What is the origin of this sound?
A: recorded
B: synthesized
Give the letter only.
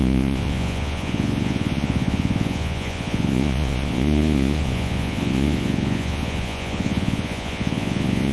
B